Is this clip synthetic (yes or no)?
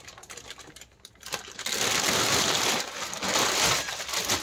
no